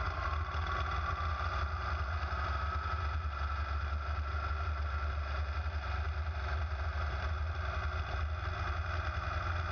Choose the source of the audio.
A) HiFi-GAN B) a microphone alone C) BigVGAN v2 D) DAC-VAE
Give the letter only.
B